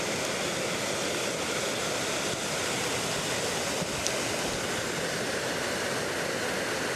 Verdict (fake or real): real